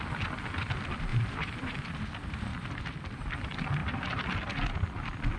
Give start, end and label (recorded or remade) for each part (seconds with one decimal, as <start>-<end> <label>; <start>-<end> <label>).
0.0-1.1 recorded; 1.1-1.9 remade; 1.9-2.5 recorded; 2.5-3.0 remade; 3.0-5.4 recorded